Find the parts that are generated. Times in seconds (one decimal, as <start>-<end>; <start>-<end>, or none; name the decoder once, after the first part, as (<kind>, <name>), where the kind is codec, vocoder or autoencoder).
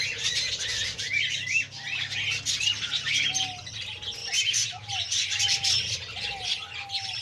none